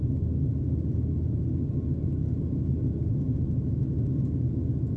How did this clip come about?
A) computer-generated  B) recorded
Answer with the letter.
B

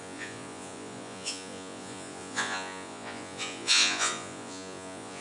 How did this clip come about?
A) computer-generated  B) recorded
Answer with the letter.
A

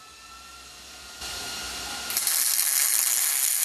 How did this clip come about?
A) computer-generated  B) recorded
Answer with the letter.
B